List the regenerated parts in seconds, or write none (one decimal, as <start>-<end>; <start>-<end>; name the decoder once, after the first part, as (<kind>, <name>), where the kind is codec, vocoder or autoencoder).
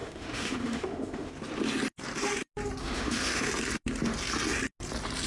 0.0-1.3 (autoencoder, DAC-VAE); 2.8-3.5